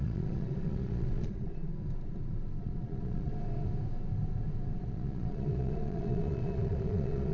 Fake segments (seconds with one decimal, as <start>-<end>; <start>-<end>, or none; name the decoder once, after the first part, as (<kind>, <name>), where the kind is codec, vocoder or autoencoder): 0.0-1.7 (vocoder, Vocos); 2.6-3.3; 4.8-7.3